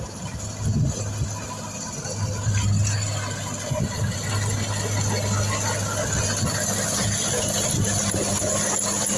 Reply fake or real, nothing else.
real